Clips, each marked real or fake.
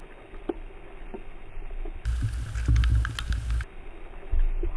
real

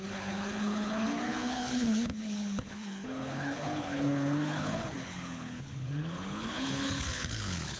fake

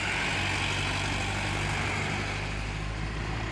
real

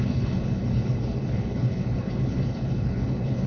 fake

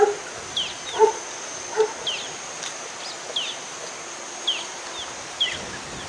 real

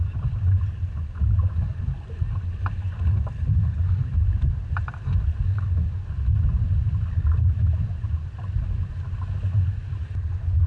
real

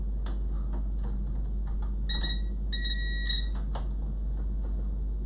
real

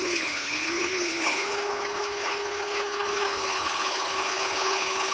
fake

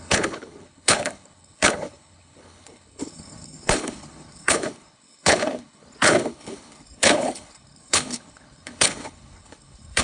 fake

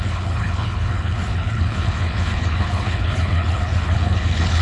fake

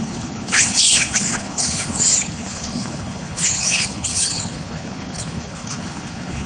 fake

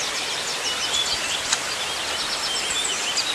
real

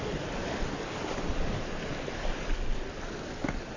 real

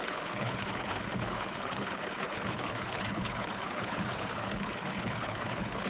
fake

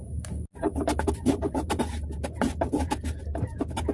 real